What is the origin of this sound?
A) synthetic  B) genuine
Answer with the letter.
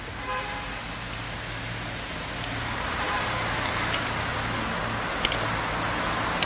B